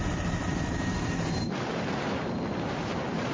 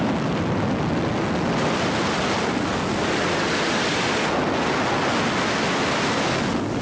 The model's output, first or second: first